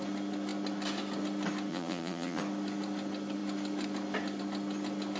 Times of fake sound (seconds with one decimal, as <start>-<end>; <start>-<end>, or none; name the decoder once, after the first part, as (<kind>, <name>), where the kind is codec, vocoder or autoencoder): 1.7-2.4 (vocoder, Vocos)

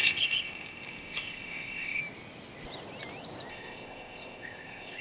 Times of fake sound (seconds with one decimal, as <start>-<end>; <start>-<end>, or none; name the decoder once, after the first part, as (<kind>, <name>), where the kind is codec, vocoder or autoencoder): 0.0-2.0 (codec, ZipCodec); 3.5-5.0

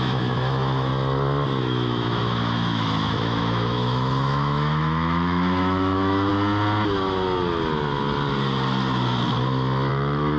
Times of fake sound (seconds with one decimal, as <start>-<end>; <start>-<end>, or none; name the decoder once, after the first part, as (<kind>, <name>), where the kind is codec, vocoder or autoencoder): 0.0-0.9 (autoencoder, DAC-VAE); 1.6-6.3; 9.9-10.4